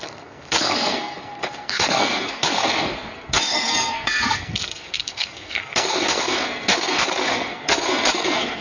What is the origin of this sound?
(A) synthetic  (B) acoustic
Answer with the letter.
A